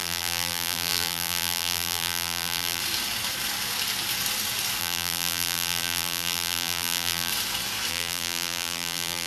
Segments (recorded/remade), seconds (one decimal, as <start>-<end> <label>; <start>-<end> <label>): 0.0-2.8 remade; 2.8-4.8 recorded; 4.8-7.3 remade; 7.3-7.9 recorded; 7.9-9.3 remade